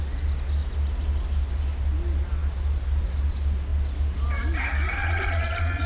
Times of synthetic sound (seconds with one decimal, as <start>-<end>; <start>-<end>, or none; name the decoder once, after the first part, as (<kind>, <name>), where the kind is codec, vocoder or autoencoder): 5.0-5.9 (vocoder, Vocos)